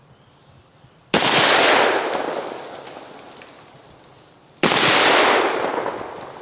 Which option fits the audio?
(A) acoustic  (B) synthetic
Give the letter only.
A